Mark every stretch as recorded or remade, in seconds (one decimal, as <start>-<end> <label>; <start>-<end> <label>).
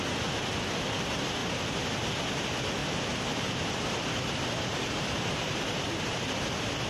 0.0-1.4 recorded; 1.4-2.1 remade; 2.1-2.8 recorded; 2.8-6.5 remade; 6.5-6.9 recorded